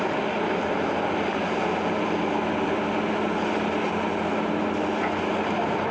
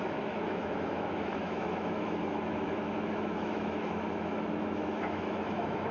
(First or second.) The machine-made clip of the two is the second